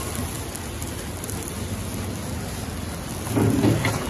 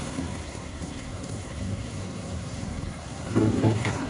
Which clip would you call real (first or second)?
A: first